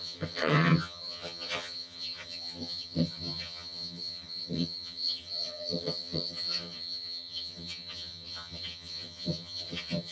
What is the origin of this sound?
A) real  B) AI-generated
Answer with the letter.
B